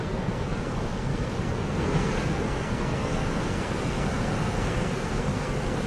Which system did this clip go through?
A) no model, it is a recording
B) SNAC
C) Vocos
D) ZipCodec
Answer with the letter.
B